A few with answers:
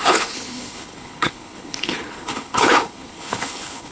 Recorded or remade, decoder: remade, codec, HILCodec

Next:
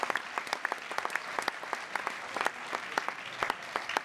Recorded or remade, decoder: recorded